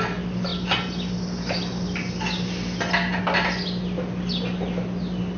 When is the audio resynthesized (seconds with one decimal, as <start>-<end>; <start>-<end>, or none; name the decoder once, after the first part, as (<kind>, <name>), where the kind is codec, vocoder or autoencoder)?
none